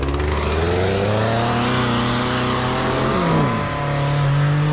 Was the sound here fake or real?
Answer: real